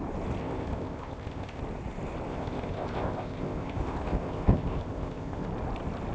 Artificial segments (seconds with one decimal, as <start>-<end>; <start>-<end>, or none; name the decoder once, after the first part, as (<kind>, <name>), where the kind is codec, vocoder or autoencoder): 0.4-1.6 (codec, ZipCodec); 2.3-5.5